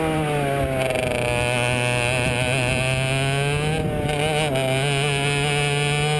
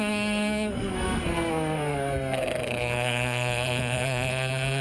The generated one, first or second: second